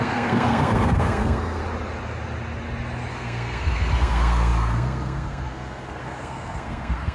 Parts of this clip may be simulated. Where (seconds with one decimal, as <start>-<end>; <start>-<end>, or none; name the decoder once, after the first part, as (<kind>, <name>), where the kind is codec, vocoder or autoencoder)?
0.0-1.6 (codec, SNAC); 3.1-7.1